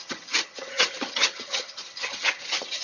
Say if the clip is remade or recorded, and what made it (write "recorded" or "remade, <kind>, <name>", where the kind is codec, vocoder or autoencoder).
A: remade, vocoder, HiFi-GAN